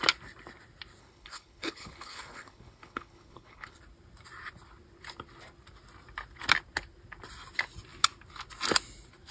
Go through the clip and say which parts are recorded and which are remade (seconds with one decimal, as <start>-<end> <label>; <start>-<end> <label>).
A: 0.0-1.0 recorded; 1.0-3.8 remade; 3.8-9.3 recorded